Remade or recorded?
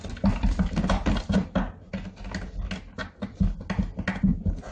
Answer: recorded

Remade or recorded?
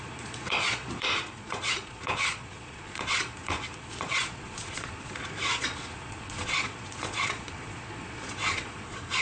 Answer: remade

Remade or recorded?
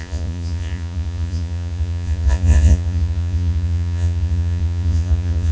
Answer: remade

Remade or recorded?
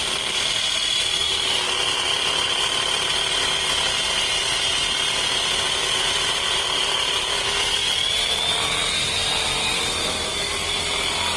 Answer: recorded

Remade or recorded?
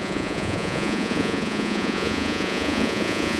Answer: remade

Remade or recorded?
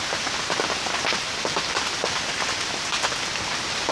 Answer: recorded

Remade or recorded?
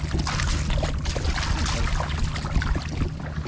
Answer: recorded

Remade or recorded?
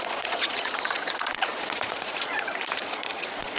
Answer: remade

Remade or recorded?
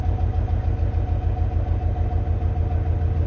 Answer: recorded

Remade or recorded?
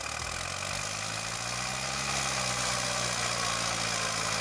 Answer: recorded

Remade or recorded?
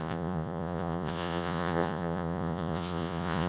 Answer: remade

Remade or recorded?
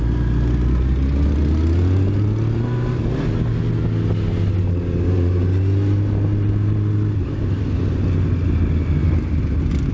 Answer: recorded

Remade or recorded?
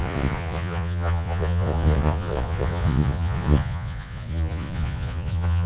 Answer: remade